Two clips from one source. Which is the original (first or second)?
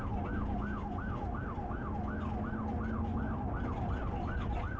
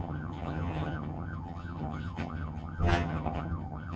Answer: first